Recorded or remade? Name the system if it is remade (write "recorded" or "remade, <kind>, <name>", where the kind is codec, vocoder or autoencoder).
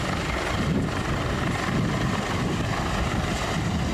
recorded